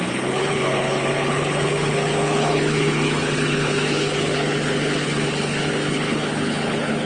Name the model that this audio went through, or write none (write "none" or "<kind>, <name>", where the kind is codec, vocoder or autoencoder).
codec, HILCodec